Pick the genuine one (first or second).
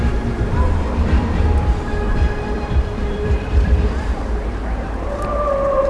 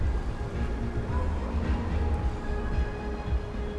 second